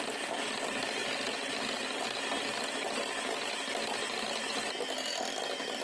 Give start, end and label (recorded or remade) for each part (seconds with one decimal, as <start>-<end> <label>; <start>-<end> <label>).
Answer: 0.0-5.8 recorded